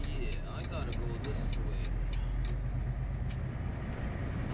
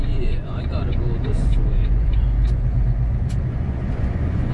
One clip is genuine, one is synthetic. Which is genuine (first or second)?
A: first